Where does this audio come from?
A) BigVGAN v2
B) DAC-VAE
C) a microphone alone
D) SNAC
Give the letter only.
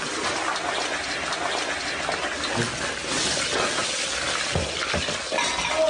C